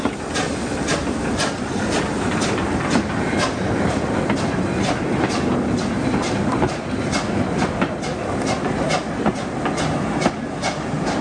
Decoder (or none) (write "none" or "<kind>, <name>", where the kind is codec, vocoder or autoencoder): none